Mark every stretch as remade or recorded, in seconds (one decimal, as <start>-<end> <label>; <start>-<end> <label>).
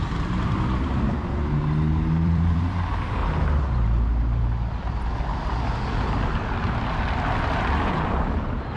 0.0-1.4 remade; 1.4-2.2 recorded; 2.2-3.2 remade; 3.2-7.4 recorded; 7.4-8.8 remade